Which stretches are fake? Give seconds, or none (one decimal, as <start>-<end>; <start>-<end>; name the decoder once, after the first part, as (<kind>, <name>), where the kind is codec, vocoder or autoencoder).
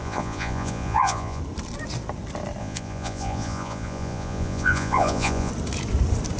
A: 0.0-1.4 (vocoder, Vocos); 2.6-5.5